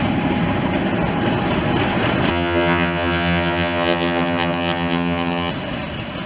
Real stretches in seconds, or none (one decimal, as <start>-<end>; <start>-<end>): 0.0-2.3; 5.5-6.3